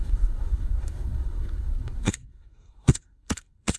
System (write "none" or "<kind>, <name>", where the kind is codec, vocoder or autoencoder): codec, SNAC